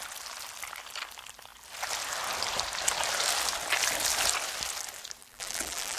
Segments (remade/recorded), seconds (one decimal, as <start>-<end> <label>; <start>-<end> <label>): 0.0-5.2 recorded; 5.2-6.0 remade